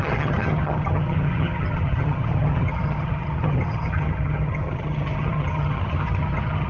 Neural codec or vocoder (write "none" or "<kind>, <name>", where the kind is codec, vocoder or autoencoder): vocoder, HiFi-GAN